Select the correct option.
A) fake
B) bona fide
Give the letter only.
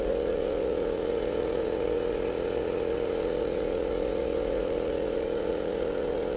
A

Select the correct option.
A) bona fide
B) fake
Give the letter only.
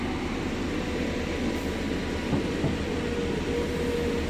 A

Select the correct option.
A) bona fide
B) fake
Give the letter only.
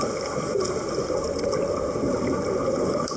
A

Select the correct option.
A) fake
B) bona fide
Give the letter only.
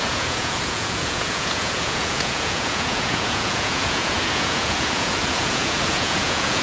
A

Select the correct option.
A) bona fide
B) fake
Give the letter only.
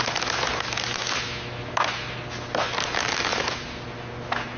A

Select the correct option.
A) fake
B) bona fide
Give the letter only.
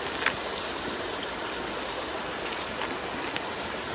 B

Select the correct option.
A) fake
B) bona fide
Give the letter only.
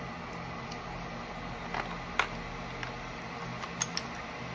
B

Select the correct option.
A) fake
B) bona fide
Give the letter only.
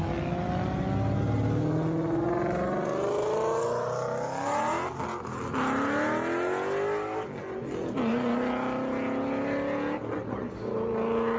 B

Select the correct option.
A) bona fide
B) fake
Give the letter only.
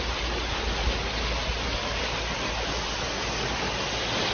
A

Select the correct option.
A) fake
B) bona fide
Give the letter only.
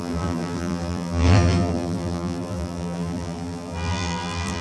A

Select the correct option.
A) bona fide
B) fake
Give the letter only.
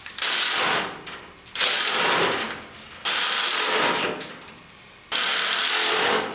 A